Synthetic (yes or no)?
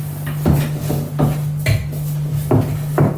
no